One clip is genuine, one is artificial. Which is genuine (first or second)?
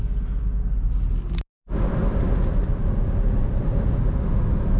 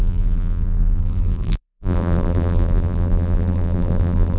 first